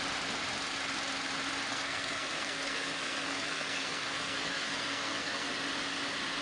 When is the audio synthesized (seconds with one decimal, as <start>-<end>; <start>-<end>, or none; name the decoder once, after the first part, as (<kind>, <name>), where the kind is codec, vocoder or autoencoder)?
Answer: 1.7-5.5 (codec, SNAC)